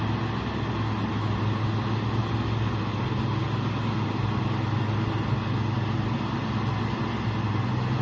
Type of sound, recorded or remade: recorded